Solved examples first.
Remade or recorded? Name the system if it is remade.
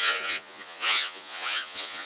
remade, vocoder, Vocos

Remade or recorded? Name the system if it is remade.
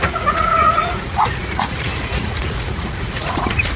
remade, vocoder, Vocos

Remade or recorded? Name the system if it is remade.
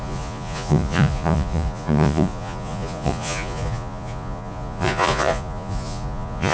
remade, vocoder, Vocos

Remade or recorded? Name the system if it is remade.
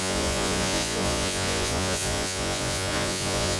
remade, vocoder, Vocos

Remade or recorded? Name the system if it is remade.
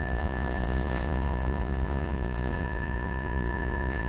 remade, vocoder, Vocos